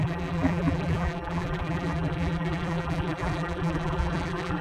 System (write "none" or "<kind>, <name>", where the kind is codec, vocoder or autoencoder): vocoder, BigVGAN v2